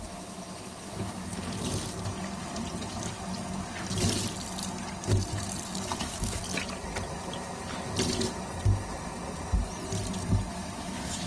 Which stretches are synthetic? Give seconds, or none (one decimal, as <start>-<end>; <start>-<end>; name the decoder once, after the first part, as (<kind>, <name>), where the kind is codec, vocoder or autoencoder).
0.0-1.3 (autoencoder, DAC-VAE); 6.0-6.4; 10.5-11.3